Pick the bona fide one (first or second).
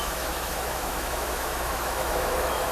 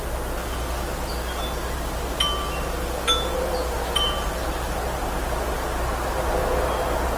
second